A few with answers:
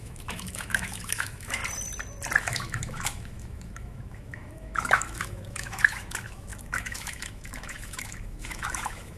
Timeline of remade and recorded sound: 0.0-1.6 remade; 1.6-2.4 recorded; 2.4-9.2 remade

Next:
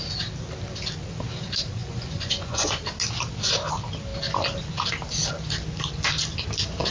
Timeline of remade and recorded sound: 0.0-1.8 recorded; 1.8-2.8 remade; 2.8-6.9 recorded

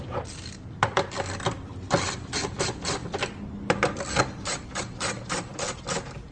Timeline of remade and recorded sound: 0.0-6.3 recorded

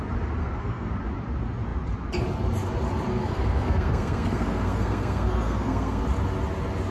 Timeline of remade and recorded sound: 0.0-0.4 recorded; 0.4-0.9 remade; 0.9-3.1 recorded; 3.1-6.0 remade; 6.0-6.9 recorded

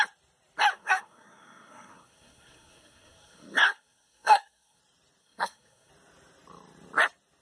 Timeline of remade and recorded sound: 0.0-0.7 recorded; 0.7-4.8 remade; 4.8-5.2 recorded; 5.2-5.9 remade; 5.9-7.4 recorded